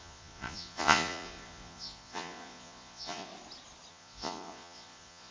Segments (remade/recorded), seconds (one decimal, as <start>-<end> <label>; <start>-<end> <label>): 0.0-3.3 remade; 3.3-3.9 recorded; 3.9-5.3 remade